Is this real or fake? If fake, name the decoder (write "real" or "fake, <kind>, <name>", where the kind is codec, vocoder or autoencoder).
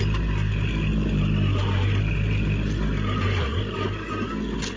real